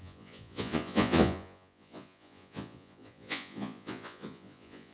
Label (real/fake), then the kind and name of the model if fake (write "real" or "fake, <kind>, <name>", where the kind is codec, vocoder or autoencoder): fake, vocoder, Vocos